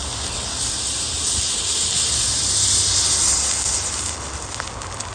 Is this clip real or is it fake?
real